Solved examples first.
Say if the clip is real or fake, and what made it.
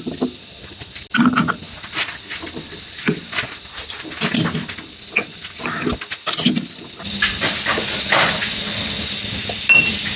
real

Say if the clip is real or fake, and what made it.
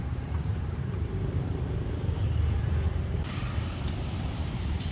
fake, vocoder, BigVGAN v2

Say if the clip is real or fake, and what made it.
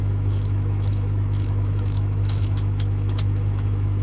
fake, autoencoder, DAC-VAE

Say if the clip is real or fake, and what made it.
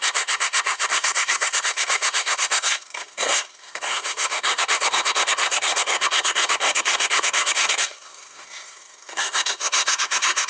fake, codec, SNAC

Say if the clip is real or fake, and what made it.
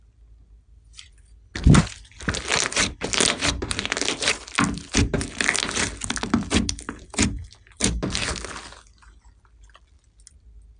real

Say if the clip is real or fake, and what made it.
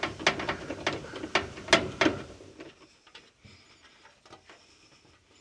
real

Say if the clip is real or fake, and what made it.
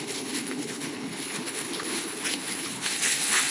fake, codec, HILCodec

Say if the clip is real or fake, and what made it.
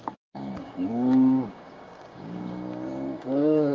fake, codec, DAC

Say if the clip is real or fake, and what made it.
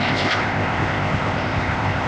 fake, codec, ZipCodec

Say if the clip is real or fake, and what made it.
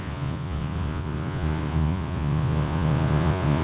fake, vocoder, Vocos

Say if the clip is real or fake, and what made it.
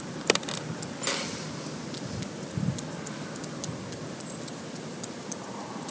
fake, vocoder, BigVGAN v2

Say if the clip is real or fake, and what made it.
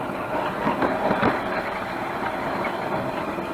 real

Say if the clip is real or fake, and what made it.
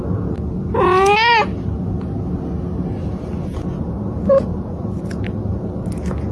real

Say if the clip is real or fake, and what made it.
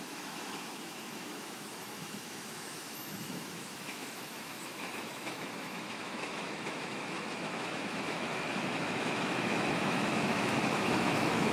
fake, autoencoder, DAC-VAE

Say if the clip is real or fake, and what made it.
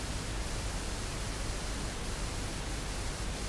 real